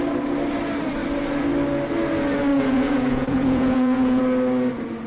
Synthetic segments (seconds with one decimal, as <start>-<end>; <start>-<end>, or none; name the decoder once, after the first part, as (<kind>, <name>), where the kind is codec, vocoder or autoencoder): 2.5-4.2 (vocoder, Vocos)